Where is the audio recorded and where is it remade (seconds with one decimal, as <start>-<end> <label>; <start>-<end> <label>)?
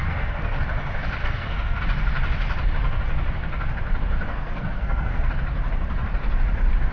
0.0-0.6 remade; 0.6-1.2 recorded; 1.2-1.8 remade; 1.8-4.3 recorded; 4.3-5.3 remade; 5.3-6.9 recorded